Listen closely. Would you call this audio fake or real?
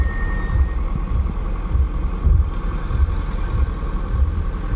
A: real